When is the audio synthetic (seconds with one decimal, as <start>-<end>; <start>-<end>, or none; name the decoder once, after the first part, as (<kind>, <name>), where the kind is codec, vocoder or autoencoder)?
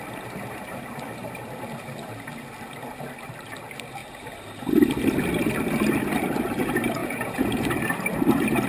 7.0-7.6 (vocoder, Vocos)